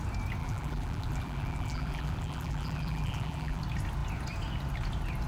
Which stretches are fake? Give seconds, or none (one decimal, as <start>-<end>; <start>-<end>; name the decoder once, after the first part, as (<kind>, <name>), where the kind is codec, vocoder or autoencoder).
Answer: 0.4-3.6 (vocoder, BigVGAN v2)